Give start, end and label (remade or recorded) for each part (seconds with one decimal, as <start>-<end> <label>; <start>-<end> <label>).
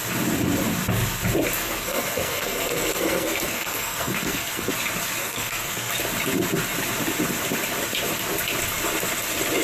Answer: 0.0-1.6 recorded; 1.6-4.7 remade; 4.7-5.2 recorded; 5.2-5.9 remade; 5.9-9.6 recorded